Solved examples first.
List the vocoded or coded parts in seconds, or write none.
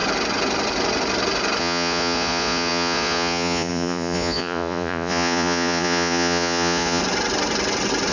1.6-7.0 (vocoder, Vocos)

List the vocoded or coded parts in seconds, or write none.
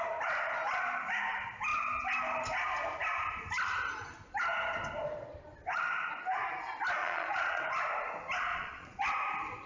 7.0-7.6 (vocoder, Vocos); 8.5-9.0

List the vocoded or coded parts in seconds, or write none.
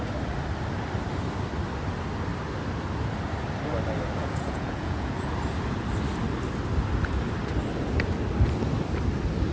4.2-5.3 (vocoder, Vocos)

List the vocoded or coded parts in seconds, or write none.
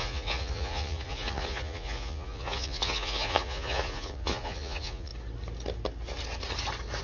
0.0-5.1 (vocoder, Vocos)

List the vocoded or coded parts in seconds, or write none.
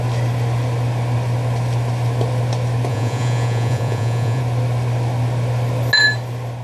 2.9-4.4 (vocoder, Vocos)